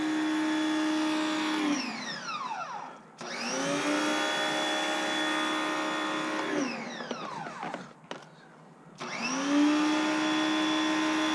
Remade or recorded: recorded